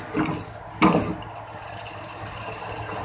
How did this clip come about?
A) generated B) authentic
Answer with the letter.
B